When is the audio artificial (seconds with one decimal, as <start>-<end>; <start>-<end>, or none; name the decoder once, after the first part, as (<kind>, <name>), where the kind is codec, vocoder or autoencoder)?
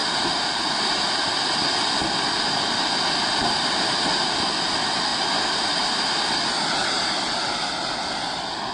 0.0-1.0 (vocoder, BigVGAN v2); 3.4-4.1